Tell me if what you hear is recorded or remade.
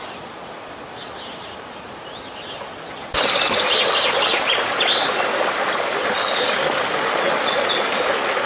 recorded